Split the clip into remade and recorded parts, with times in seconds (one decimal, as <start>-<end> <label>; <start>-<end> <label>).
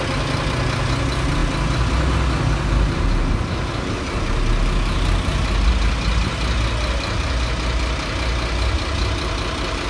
0.0-9.9 recorded